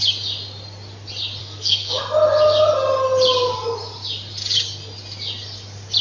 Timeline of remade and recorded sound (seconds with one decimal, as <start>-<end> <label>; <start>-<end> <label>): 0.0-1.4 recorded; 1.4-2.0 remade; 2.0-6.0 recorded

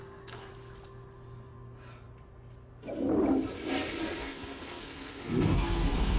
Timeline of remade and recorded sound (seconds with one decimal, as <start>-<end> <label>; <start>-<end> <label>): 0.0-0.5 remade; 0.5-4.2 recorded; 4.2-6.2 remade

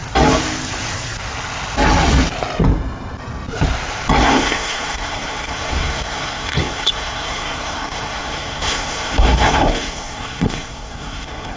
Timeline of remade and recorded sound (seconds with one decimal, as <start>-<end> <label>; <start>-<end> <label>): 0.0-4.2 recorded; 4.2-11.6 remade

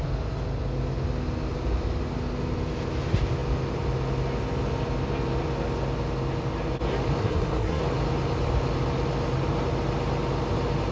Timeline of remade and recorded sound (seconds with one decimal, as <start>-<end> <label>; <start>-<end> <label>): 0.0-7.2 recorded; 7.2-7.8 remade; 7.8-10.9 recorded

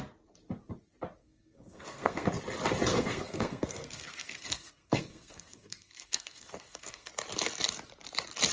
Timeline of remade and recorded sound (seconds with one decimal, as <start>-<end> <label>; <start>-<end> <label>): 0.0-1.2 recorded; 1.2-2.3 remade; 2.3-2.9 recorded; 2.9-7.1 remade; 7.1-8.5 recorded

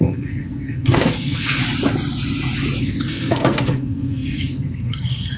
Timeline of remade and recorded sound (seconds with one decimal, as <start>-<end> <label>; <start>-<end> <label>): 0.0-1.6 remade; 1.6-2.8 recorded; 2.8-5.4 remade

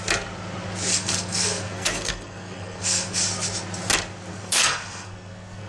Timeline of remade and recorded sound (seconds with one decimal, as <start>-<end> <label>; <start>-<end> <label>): 0.0-0.9 recorded; 0.9-3.2 remade; 3.2-4.3 recorded; 4.3-5.7 remade